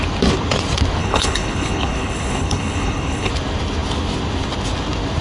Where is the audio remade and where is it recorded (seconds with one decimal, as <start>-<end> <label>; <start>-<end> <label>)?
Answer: 0.0-1.0 recorded; 1.0-3.3 remade; 3.3-5.2 recorded